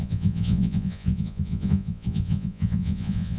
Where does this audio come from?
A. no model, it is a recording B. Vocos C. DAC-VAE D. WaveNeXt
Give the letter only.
B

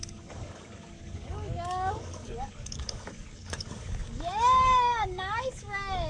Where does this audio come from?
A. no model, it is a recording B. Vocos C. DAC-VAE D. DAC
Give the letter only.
D